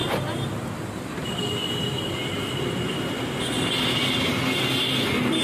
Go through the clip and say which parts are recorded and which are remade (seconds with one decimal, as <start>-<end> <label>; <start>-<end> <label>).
0.0-5.4 recorded